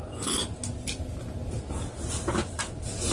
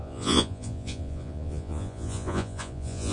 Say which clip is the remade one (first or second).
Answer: second